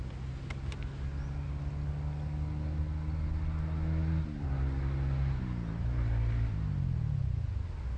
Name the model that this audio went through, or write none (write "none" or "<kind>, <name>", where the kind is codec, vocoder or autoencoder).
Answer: none